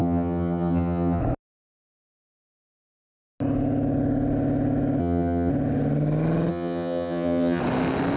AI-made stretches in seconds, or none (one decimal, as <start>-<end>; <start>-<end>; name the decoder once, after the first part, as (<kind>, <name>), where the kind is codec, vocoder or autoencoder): 0.0-1.2 (vocoder, HiFi-GAN); 5.0-5.5; 6.5-7.6